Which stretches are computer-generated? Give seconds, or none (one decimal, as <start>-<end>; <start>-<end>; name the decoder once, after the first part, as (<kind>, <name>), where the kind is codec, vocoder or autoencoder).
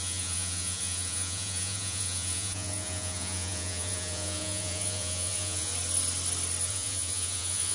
0.0-5.7 (vocoder, Vocos); 6.7-7.7